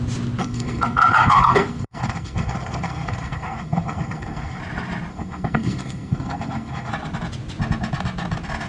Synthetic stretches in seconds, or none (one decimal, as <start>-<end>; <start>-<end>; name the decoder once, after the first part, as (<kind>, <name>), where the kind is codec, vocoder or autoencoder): 0.4-4.6 (codec, SNAC); 5.1-6.9